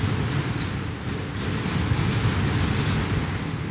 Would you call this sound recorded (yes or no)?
yes